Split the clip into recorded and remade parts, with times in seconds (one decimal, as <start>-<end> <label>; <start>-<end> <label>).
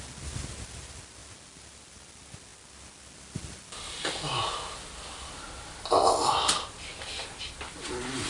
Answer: 0.0-8.3 recorded